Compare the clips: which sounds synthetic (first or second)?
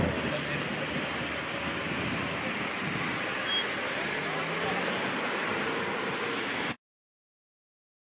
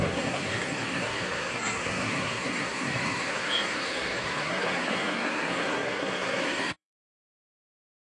second